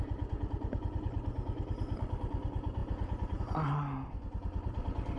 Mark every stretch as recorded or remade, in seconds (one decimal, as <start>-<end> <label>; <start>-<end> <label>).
0.0-5.2 recorded